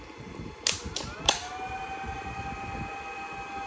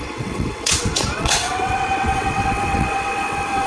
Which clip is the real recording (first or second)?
first